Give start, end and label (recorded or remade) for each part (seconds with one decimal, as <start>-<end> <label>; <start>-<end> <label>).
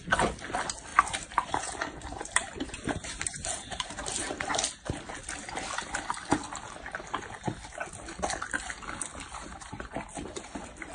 0.0-0.9 recorded; 0.9-4.5 remade; 4.5-9.1 recorded; 9.1-9.9 remade; 9.9-10.9 recorded